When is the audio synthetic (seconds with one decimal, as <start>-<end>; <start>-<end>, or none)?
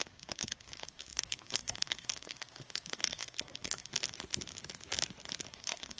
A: 0.0-3.9; 5.5-6.0